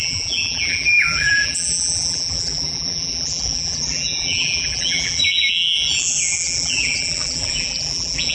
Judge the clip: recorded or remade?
remade